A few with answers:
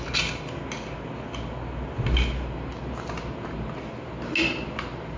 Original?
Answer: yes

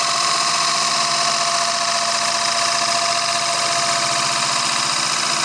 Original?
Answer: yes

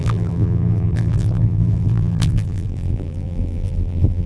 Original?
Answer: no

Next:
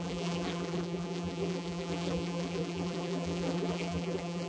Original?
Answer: no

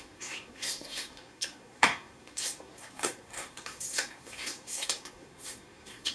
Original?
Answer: no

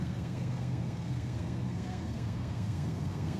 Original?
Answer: no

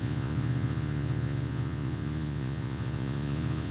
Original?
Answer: no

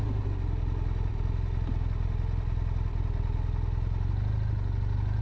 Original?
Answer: yes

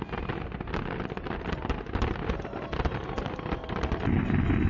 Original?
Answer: yes